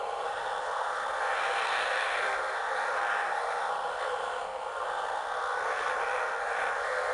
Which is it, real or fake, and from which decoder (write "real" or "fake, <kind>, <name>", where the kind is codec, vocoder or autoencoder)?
fake, codec, SNAC